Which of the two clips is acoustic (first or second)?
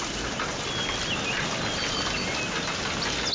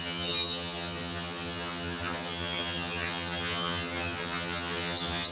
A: first